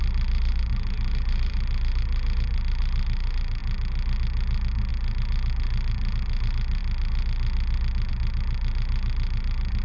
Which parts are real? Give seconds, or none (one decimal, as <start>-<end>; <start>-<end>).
3.6-4.9; 6.8-8.1